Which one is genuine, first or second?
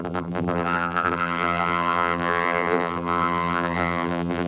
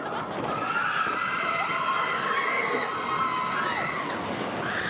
second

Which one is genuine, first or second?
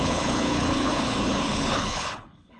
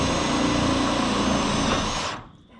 second